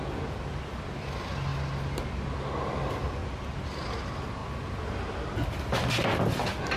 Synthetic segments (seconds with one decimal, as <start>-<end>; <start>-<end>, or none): none